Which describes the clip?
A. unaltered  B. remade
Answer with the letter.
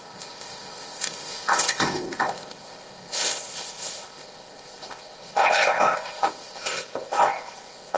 B